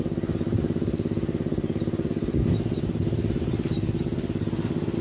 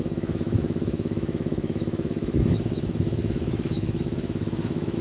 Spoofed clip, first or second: second